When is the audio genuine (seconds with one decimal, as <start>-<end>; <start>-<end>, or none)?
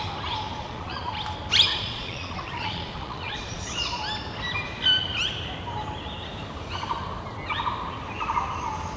0.0-0.6; 1.1-1.7; 4.0-9.0